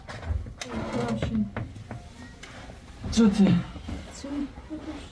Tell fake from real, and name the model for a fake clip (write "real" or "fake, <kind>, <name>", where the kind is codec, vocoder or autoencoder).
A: real